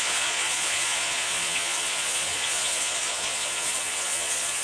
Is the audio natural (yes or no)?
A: no